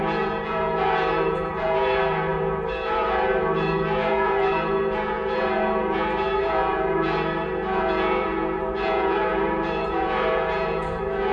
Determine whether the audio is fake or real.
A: fake